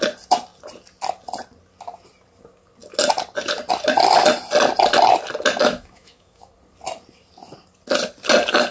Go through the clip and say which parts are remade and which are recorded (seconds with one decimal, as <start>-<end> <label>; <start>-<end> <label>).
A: 0.0-5.6 recorded; 5.6-6.5 remade; 6.5-8.7 recorded